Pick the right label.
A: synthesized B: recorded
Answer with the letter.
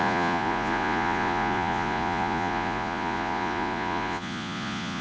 A